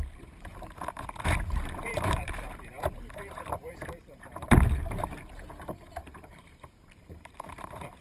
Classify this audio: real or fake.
fake